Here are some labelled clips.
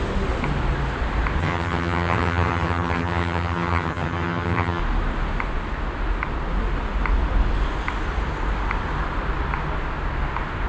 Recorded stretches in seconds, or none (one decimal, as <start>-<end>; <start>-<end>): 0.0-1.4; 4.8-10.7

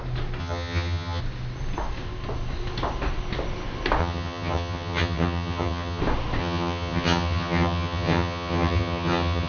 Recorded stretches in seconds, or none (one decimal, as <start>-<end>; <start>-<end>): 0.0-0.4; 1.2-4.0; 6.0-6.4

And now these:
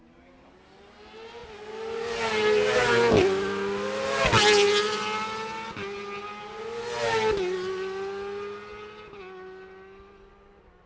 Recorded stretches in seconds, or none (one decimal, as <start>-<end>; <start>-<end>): 0.0-10.9

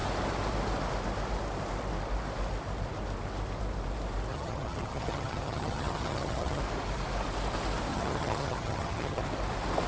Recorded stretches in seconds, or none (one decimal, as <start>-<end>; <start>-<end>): 0.0-4.3; 6.6-7.9; 9.2-9.9